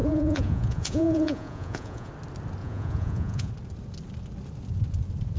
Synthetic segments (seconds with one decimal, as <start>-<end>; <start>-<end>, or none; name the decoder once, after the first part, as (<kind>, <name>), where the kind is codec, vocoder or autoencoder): 0.0-2.1 (vocoder, Vocos); 2.6-3.5